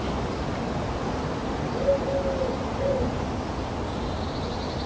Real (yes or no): yes